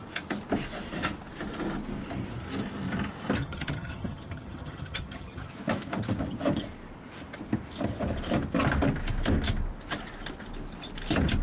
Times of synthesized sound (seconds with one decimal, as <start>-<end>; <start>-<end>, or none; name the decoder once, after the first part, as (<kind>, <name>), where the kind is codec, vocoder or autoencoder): 3.4-5.5 (vocoder, HiFi-GAN)